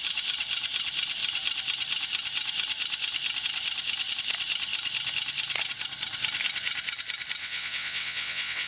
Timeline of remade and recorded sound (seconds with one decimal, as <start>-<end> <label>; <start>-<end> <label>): 0.0-7.4 recorded; 7.4-8.7 remade